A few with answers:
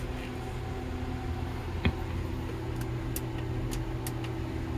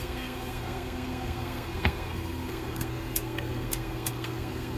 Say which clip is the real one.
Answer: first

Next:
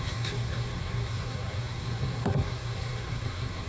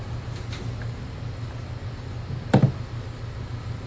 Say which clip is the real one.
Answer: second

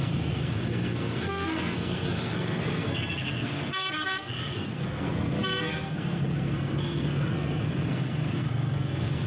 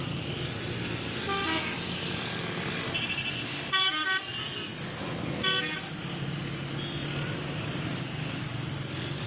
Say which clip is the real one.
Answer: second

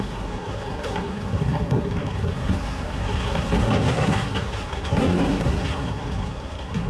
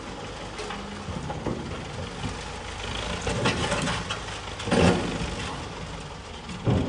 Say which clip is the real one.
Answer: second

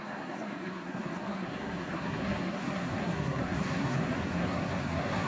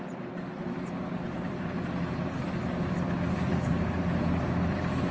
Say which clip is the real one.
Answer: second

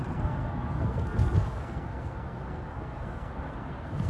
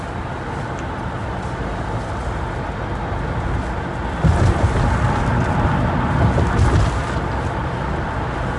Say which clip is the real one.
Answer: second